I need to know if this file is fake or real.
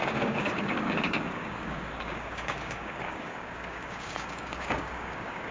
fake